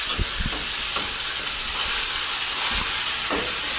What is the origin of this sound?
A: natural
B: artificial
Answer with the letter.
A